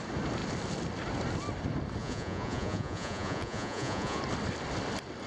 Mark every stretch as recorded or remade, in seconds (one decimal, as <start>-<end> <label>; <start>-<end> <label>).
0.0-2.0 recorded; 2.0-4.2 remade; 4.2-5.3 recorded